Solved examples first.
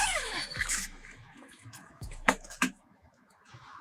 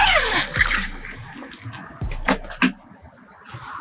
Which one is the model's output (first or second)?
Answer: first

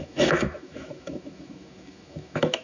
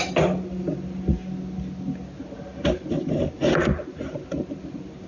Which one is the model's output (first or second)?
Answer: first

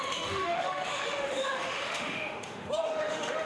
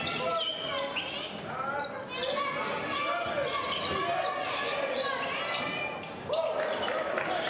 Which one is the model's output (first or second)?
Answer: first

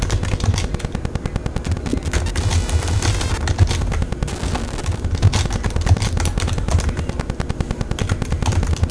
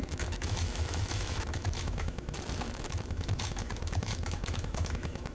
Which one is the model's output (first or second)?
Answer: second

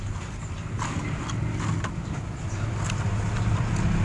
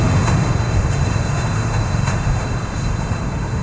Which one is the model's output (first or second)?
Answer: second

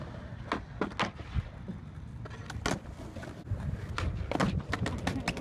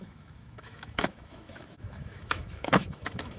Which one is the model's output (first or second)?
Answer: second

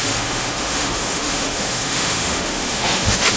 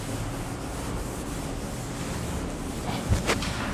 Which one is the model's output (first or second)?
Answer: first